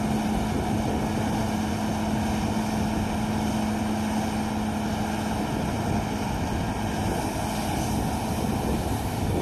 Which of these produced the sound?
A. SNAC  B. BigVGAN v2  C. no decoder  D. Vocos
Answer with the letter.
C